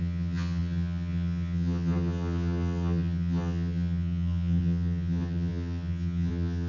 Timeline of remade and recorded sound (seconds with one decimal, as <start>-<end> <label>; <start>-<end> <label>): 0.0-6.7 remade